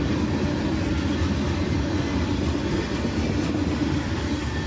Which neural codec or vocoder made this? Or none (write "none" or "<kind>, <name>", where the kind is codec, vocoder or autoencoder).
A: none